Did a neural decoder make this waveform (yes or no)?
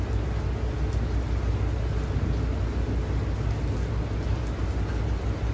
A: no